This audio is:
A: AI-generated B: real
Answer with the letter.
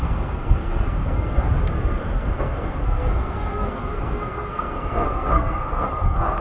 A